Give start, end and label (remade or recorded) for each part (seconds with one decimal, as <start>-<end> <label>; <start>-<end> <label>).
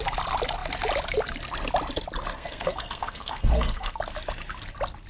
0.0-2.3 recorded; 2.3-4.0 remade; 4.0-5.1 recorded